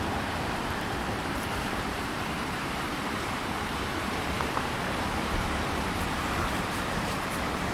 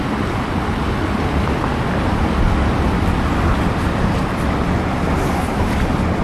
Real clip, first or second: second